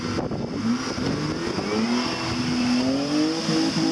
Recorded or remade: recorded